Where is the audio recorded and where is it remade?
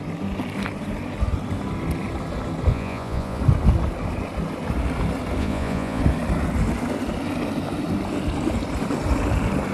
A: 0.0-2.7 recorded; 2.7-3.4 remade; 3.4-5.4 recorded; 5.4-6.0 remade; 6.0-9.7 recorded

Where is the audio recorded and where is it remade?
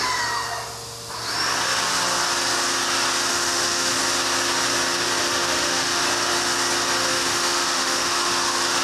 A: 0.0-3.3 recorded; 3.3-4.0 remade; 4.0-5.2 recorded; 5.2-6.0 remade; 6.0-7.1 recorded; 7.1-8.3 remade; 8.3-8.8 recorded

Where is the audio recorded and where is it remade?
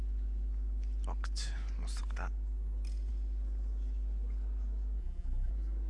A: 0.0-5.0 recorded; 5.0-5.5 remade; 5.5-5.9 recorded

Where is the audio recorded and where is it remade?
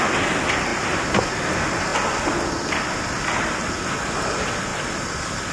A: 0.0-0.7 recorded; 0.7-1.3 remade; 1.3-4.7 recorded; 4.7-5.5 remade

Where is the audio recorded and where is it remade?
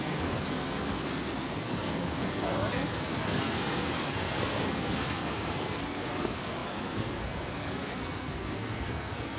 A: 0.0-9.4 remade